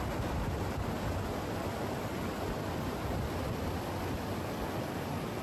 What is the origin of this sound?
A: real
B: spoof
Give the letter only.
A